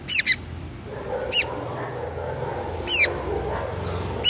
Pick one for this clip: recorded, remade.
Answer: recorded